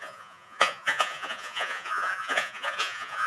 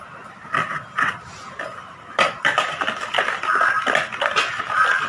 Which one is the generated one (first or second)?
first